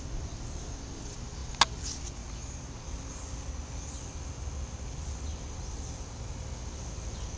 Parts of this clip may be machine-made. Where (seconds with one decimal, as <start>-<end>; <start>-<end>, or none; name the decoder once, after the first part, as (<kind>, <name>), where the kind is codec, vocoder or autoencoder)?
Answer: none